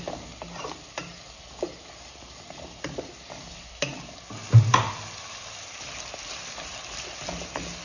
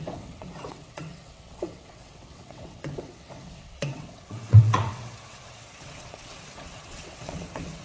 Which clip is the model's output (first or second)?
second